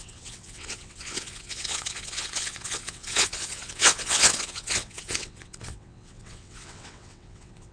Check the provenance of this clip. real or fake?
fake